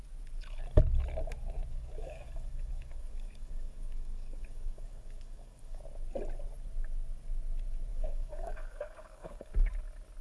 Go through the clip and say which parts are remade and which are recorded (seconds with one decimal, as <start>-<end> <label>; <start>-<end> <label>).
0.0-1.7 recorded; 1.7-5.8 remade; 5.8-7.9 recorded; 7.9-9.5 remade; 9.5-10.2 recorded